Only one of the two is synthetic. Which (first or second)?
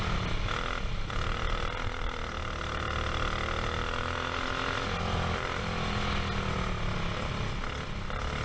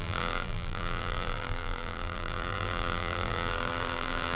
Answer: second